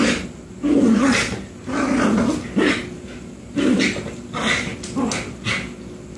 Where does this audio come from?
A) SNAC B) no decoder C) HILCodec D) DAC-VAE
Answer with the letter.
B